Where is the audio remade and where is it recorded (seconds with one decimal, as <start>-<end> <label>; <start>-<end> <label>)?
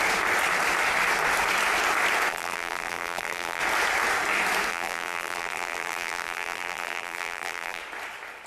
0.0-2.3 recorded; 2.3-3.6 remade; 3.6-4.7 recorded; 4.7-7.8 remade; 7.8-8.5 recorded